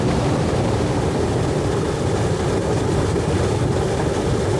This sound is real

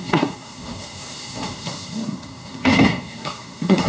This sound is fake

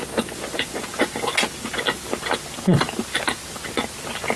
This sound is real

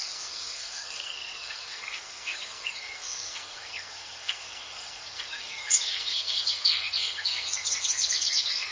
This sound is fake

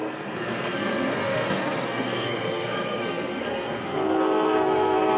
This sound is fake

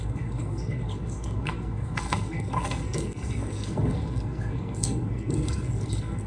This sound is fake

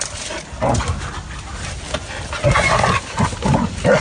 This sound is real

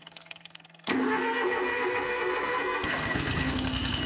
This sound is fake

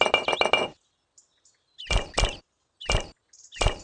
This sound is real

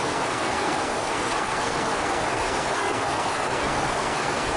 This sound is fake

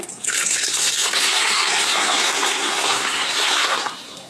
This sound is fake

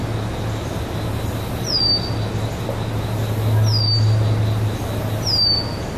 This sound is real